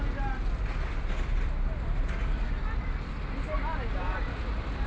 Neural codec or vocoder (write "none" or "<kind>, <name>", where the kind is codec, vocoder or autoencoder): none